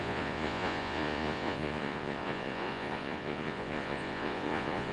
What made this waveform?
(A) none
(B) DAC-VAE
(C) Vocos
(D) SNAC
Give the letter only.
C